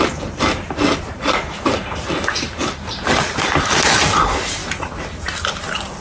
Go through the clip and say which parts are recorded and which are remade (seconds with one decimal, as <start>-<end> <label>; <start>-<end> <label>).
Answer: 0.0-6.0 recorded